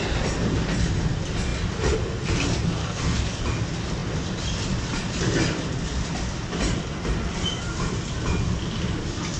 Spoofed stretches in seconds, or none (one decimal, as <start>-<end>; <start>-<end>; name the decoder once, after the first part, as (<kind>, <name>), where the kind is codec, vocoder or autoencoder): 2.8-3.4 (codec, SNAC)